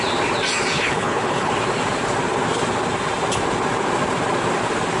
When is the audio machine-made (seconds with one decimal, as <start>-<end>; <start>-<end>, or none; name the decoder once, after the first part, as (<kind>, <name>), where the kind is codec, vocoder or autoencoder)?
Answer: 0.7-1.5 (codec, HILCodec)